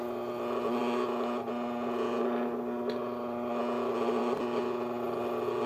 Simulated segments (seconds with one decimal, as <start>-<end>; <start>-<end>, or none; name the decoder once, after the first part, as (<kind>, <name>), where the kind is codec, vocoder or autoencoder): none